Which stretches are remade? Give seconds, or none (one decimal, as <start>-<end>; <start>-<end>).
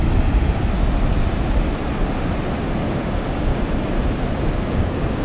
3.1-3.5; 4.6-5.2